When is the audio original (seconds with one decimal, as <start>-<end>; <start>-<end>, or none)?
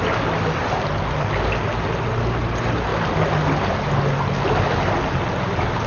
0.0-5.9